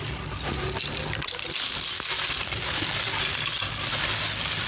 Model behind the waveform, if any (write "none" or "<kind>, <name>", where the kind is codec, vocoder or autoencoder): none